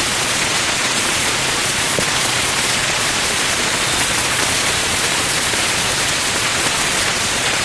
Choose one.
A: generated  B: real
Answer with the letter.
A